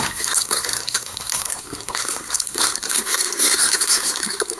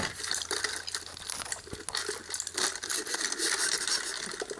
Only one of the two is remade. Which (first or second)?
first